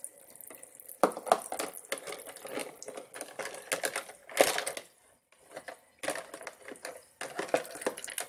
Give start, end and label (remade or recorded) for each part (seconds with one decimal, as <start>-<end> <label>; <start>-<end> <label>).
0.0-8.3 recorded